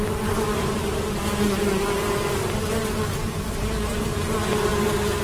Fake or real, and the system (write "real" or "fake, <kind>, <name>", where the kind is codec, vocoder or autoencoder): real